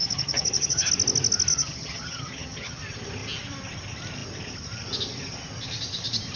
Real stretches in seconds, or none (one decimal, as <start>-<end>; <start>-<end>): 0.9-1.5; 2.8-6.4